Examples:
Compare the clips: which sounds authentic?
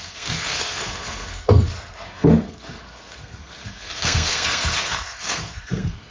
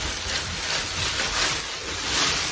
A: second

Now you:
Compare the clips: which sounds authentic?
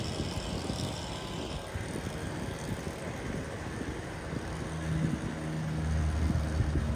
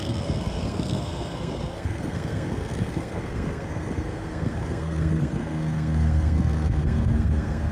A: first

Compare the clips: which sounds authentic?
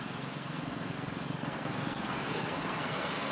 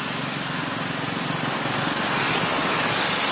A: second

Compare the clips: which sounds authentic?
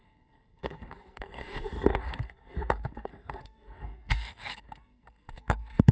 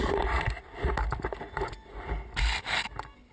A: second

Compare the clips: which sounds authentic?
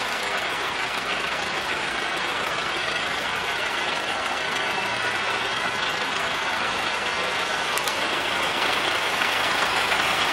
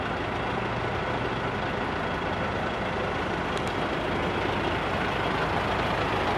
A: second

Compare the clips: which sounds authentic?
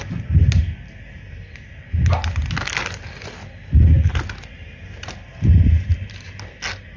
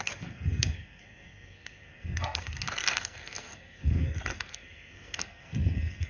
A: first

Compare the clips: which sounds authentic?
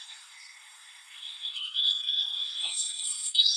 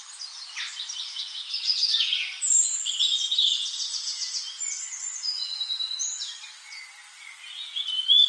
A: second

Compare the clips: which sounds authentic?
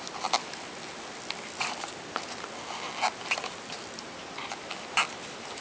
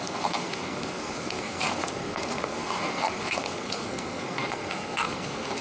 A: first